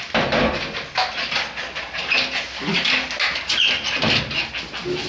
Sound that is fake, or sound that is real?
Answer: real